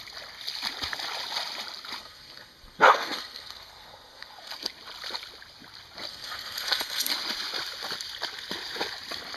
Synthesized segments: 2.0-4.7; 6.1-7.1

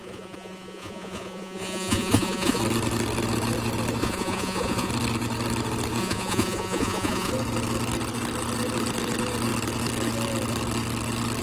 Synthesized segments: 0.0-2.6; 4.0-4.9; 6.0-7.3

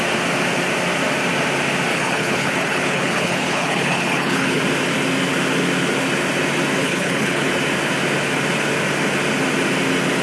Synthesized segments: 1.9-4.6; 6.8-7.5

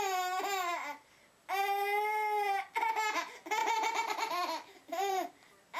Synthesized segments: 3.6-5.3

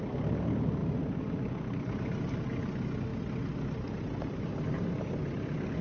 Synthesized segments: none